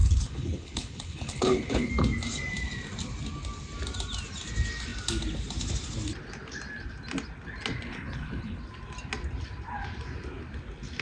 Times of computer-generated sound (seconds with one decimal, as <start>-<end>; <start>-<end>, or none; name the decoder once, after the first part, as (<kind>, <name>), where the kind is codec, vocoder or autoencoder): 0.0-1.9 (codec, HILCodec); 7.9-8.6